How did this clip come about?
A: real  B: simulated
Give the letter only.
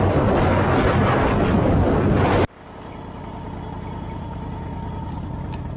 A